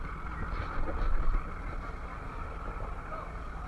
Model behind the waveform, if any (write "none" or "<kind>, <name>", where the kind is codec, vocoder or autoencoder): none